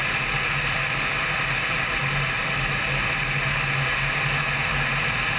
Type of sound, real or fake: real